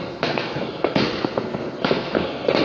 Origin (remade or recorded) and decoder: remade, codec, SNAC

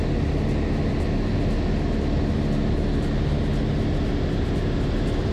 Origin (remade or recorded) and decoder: recorded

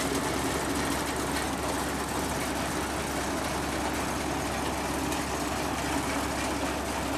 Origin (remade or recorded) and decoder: recorded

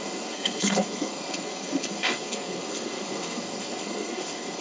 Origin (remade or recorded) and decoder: remade, codec, SNAC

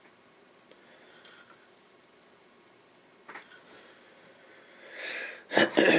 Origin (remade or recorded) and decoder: recorded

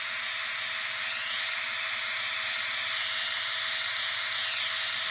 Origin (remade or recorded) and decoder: recorded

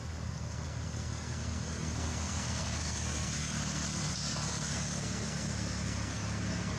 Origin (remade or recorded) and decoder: remade, codec, SNAC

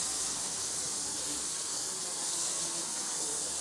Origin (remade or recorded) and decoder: remade, codec, SNAC